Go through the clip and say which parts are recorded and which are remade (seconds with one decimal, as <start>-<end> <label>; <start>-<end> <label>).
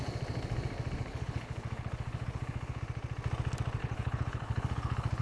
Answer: 0.0-1.0 recorded; 1.0-2.8 remade; 2.8-3.8 recorded; 3.8-5.2 remade